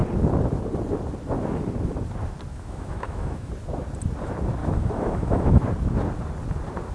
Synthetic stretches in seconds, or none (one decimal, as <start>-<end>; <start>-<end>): 2.5-3.5; 4.6-5.6